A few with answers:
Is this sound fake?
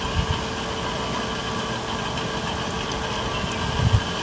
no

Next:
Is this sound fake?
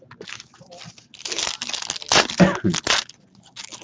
no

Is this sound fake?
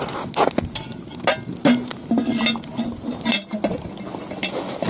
no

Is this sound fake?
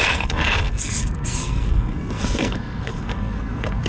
yes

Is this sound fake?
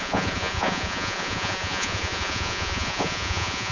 yes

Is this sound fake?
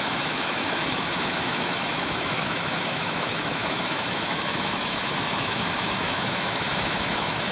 yes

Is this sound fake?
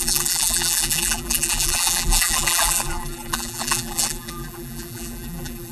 yes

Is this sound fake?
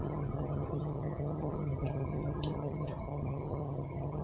yes